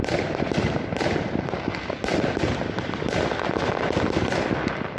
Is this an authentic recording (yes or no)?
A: yes